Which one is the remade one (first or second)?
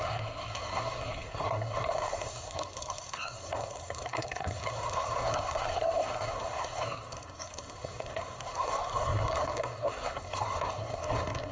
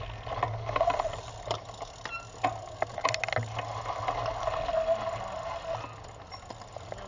first